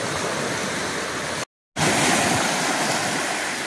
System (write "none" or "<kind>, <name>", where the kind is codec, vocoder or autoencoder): none